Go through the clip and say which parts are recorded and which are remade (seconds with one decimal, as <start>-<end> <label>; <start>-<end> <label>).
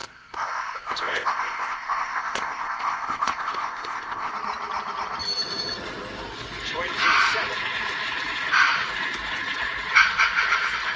0.0-4.3 remade; 4.3-11.0 recorded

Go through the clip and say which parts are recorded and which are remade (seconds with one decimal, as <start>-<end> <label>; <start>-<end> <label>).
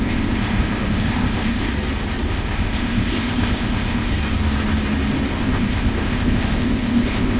0.0-1.7 remade; 1.7-2.3 recorded; 2.3-4.1 remade; 4.1-5.4 recorded; 5.4-7.4 remade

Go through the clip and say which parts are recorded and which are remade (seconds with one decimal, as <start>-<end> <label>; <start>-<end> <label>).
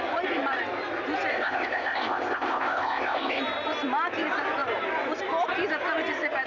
0.0-1.3 recorded; 1.3-3.4 remade; 3.4-6.5 recorded